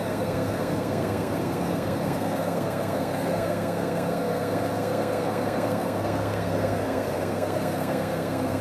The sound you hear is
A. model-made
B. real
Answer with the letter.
A